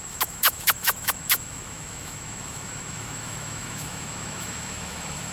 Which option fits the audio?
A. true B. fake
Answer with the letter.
B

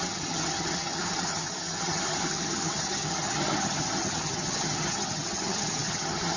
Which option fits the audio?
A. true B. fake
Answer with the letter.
B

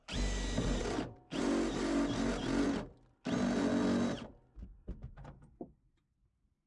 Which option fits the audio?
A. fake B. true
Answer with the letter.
B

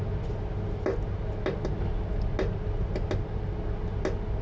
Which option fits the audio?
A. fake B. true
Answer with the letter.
B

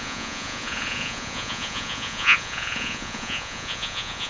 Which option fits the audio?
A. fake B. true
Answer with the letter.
A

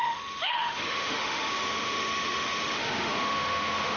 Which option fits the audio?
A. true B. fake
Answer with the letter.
B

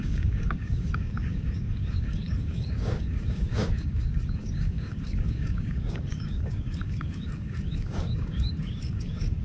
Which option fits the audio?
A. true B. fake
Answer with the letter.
B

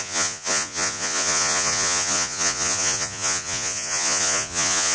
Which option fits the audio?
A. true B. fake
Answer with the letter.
B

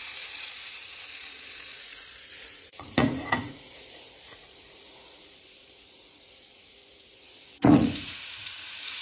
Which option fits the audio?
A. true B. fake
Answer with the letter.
B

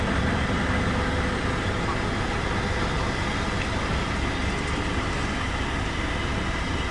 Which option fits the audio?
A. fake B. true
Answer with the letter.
B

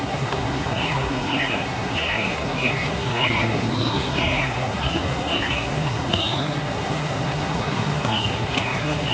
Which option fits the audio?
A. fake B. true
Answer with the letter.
A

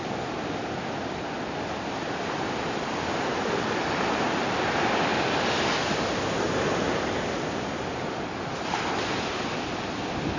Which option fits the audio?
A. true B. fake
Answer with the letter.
A